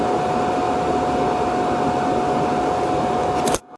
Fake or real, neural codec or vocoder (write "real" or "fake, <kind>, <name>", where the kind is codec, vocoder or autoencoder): real